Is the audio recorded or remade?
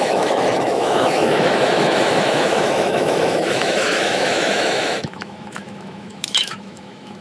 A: remade